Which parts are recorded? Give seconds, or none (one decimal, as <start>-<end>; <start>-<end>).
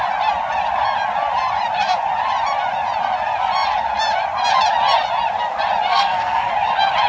0.0-5.9; 6.5-7.1